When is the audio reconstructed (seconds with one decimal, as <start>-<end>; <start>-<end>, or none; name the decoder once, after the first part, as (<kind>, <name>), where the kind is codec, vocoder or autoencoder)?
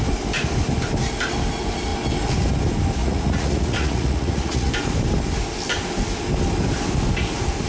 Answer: 3.0-4.7 (vocoder, Vocos)